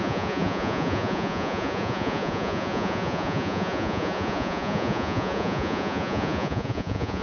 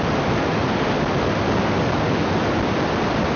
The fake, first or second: first